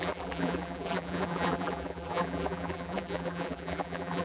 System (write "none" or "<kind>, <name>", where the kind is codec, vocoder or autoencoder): vocoder, BigVGAN v2